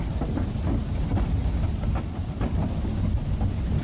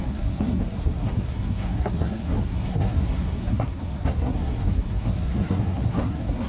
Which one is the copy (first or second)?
second